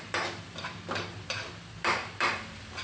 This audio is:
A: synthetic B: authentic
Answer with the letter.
A